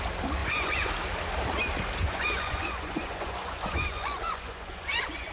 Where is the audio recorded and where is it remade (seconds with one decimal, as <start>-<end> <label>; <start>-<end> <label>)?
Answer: 0.0-0.4 recorded; 0.4-0.9 remade; 0.9-2.0 recorded; 2.0-5.3 remade